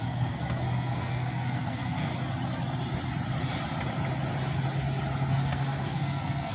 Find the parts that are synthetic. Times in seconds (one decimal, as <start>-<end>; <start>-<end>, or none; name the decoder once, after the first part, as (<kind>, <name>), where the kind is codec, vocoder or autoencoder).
0.0-2.1 (codec, SNAC); 5.3-6.5